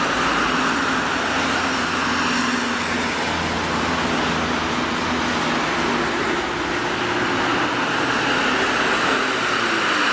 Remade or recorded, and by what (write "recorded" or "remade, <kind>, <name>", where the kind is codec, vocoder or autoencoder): recorded